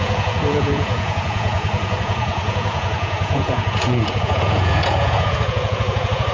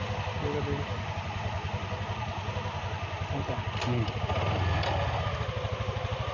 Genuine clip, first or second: second